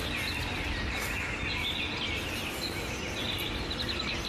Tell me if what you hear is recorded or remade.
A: recorded